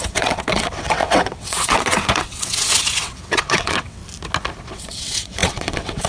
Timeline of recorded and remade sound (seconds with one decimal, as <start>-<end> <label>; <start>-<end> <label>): 0.0-4.0 remade; 4.0-4.7 recorded; 4.7-6.1 remade